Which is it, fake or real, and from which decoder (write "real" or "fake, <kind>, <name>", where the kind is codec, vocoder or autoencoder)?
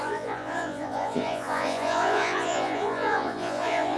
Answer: fake, vocoder, Vocos